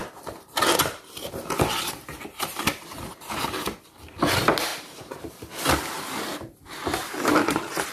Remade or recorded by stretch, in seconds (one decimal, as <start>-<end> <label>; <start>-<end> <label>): 0.0-1.5 remade; 1.5-4.7 recorded; 4.7-5.3 remade; 5.3-7.9 recorded